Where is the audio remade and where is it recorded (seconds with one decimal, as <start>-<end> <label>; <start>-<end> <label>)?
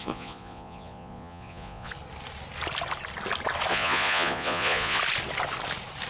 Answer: 0.0-1.9 remade; 1.9-3.7 recorded; 3.7-5.0 remade; 5.0-6.1 recorded